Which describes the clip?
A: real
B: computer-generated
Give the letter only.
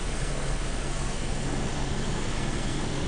B